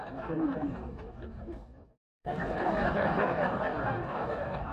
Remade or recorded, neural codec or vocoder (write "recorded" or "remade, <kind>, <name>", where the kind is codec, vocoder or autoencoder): remade, codec, DAC